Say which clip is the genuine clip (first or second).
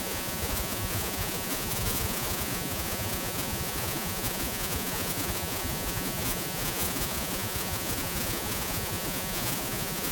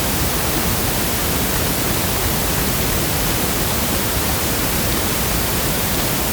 second